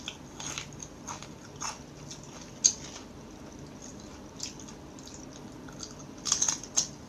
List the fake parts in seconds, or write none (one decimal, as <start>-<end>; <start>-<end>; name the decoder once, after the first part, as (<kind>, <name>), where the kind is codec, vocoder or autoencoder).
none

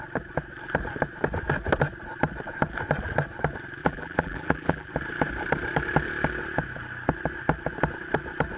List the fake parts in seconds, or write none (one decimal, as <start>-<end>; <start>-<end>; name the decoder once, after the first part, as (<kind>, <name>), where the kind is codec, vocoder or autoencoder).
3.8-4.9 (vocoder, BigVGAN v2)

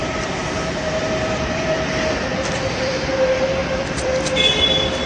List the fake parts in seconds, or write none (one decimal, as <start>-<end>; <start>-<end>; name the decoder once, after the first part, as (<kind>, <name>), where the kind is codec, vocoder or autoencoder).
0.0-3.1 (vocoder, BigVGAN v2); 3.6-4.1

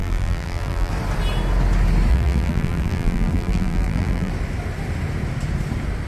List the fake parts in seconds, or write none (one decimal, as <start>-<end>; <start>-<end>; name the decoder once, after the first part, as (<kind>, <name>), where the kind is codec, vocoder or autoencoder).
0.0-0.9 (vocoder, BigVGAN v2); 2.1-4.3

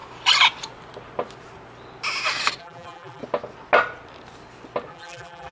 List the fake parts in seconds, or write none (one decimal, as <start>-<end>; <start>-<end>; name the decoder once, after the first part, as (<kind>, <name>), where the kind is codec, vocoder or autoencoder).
2.6-3.2 (vocoder, BigVGAN v2); 4.9-5.5

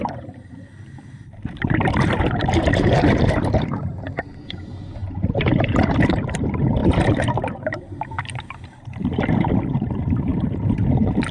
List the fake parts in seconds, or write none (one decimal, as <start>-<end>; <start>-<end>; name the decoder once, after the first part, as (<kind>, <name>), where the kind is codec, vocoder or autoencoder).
0.0-11.3 (vocoder, BigVGAN v2)